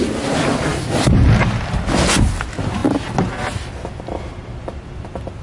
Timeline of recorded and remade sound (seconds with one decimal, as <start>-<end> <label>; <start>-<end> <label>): 0.0-5.4 recorded